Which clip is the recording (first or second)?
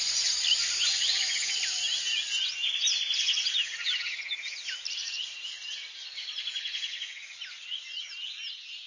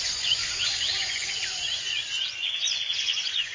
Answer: first